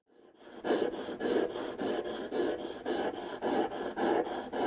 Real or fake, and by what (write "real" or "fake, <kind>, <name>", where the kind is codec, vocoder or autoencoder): real